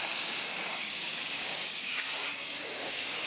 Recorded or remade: remade